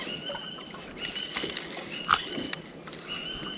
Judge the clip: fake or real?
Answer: real